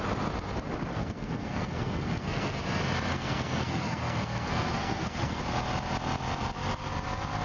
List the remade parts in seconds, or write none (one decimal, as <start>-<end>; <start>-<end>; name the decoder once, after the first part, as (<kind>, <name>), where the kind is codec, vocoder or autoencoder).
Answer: 0.9-2.6 (codec, SNAC); 3.1-5.4